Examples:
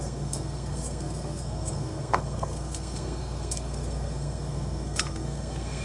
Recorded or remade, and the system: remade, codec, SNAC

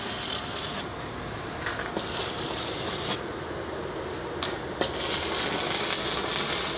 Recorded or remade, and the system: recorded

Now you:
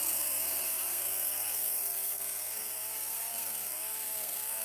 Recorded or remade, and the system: remade, codec, SNAC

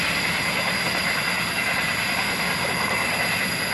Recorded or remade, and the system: recorded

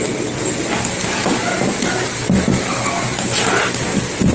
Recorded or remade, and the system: recorded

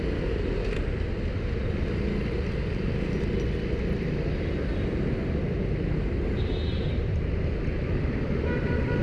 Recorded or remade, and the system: recorded